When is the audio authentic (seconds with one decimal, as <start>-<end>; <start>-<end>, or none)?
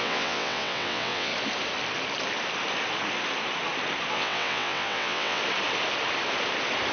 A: 1.3-4.1; 5.4-6.9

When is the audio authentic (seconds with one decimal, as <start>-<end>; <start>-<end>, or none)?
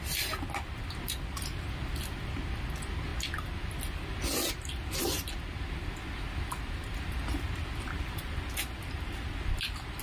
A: 0.0-10.0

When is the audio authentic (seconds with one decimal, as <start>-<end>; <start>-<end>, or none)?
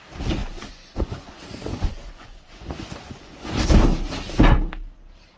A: 0.0-0.4; 3.6-5.4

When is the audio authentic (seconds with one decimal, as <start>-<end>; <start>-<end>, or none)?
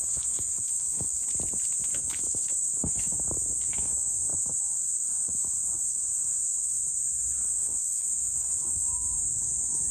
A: 1.2-2.0; 6.8-7.5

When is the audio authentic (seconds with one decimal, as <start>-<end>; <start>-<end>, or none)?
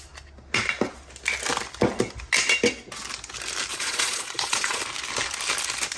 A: 0.0-3.7; 4.8-6.0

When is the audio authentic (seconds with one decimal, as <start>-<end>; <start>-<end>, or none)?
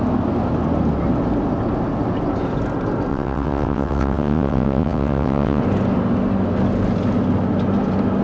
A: 0.0-3.1; 5.6-8.2